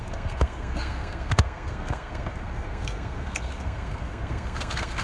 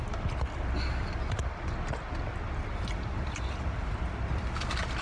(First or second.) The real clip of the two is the second